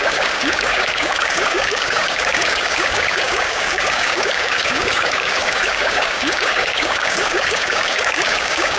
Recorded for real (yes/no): no